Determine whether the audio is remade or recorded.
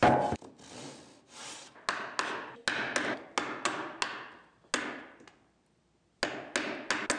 recorded